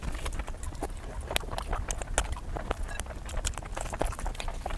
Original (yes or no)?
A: yes